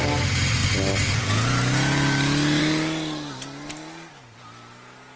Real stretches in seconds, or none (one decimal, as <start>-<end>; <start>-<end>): 0.0-5.2